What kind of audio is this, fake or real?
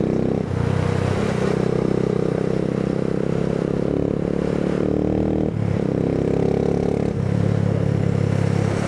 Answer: real